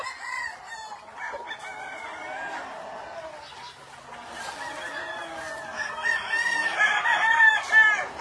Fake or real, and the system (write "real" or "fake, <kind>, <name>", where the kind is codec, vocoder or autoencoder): real